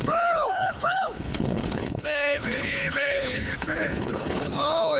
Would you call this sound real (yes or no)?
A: no